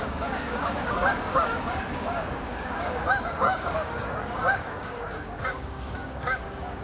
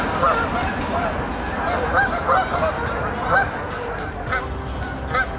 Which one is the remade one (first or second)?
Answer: first